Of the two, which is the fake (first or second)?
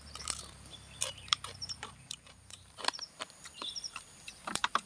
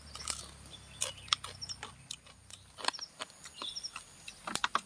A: first